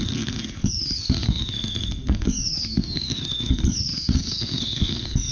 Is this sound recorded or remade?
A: remade